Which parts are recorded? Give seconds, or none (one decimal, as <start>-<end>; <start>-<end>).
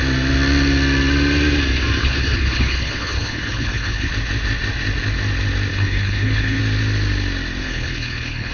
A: 0.0-2.0; 4.1-5.7; 6.6-7.6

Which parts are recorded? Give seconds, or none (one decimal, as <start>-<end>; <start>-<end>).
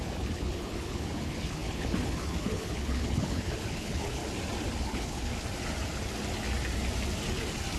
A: 4.2-4.8; 5.3-7.8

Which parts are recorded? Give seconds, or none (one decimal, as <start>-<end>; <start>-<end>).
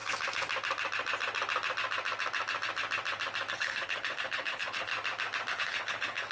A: 0.0-3.5; 4.9-5.5